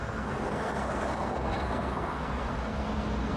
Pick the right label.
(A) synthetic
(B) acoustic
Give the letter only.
A